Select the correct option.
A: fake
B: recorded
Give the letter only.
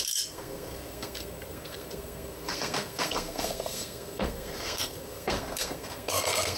A